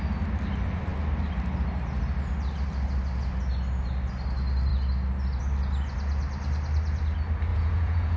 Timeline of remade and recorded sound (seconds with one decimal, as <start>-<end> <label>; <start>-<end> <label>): 0.0-7.5 recorded; 7.5-8.2 remade